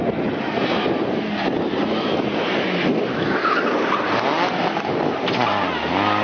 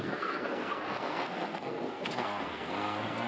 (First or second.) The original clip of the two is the first